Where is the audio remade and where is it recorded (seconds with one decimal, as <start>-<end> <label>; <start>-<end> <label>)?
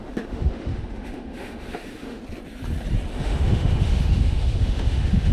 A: 0.0-2.2 remade; 2.2-3.1 recorded; 3.1-5.3 remade